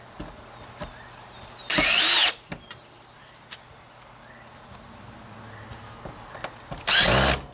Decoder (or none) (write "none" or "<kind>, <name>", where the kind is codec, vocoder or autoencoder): none